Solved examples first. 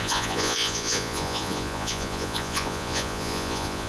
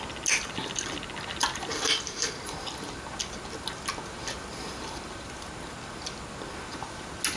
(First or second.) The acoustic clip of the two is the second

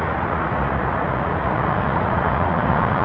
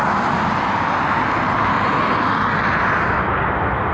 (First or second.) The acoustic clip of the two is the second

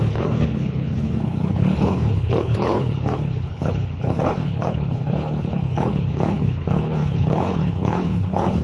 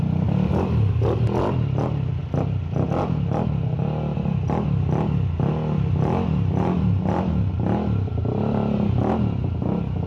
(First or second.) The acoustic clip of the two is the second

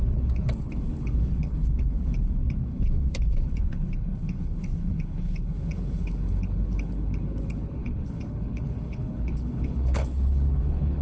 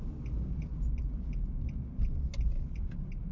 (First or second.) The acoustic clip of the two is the second